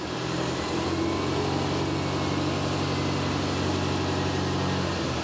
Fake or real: real